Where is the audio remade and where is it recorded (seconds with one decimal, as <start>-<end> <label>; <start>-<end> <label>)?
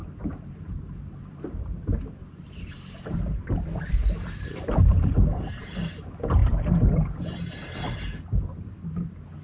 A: 0.0-3.5 remade; 3.5-4.0 recorded; 4.0-4.8 remade; 4.8-6.4 recorded; 6.4-8.0 remade; 8.0-9.4 recorded